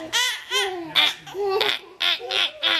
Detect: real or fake real